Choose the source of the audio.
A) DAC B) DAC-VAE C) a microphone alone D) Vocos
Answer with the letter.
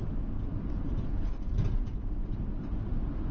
C